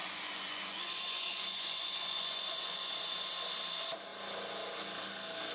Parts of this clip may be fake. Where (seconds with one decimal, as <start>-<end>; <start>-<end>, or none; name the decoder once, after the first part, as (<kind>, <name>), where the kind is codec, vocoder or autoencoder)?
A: 0.0-3.3 (vocoder, Vocos)